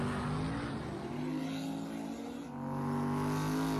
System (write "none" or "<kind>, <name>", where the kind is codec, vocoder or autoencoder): none